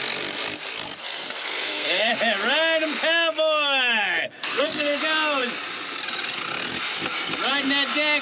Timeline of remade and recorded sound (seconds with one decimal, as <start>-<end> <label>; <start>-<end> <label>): 0.0-1.0 recorded; 1.0-2.1 remade; 2.1-4.4 recorded; 4.4-5.0 remade; 5.0-8.2 recorded